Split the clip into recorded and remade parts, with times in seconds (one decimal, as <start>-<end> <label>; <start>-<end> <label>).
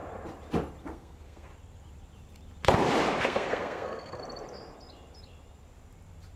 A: 0.0-0.8 recorded; 0.8-1.5 remade; 1.5-3.2 recorded; 3.2-4.2 remade; 4.2-6.4 recorded